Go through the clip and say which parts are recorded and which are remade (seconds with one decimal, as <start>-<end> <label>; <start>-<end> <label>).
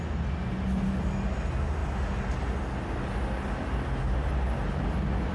0.0-5.3 recorded